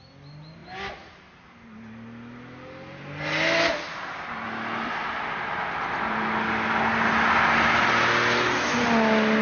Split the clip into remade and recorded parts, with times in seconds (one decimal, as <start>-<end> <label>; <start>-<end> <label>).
0.0-9.4 recorded